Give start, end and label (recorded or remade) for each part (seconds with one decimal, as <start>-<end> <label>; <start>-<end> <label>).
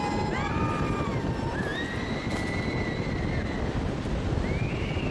0.0-1.7 remade; 1.7-5.1 recorded